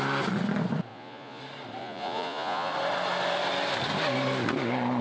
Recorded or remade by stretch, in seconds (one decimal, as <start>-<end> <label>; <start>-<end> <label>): 0.0-0.9 recorded; 0.9-1.4 remade; 1.4-1.8 recorded; 1.8-2.7 remade; 2.7-5.0 recorded